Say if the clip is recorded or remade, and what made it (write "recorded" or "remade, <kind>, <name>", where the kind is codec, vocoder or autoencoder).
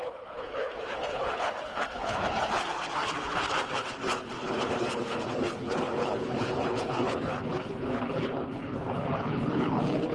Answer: remade, codec, HILCodec